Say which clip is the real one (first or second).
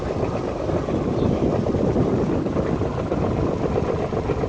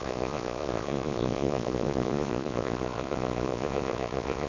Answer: first